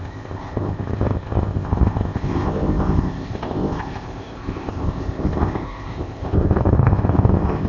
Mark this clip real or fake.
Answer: fake